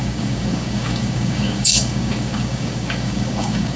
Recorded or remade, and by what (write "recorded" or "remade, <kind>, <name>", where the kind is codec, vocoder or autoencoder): remade, codec, DAC